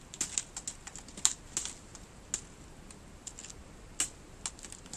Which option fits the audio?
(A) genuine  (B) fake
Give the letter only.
A